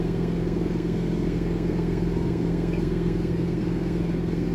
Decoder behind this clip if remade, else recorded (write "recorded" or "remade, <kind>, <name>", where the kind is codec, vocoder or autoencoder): remade, codec, SNAC